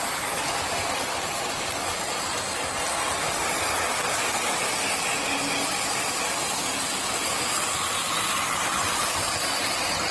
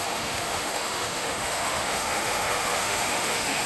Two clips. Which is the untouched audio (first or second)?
first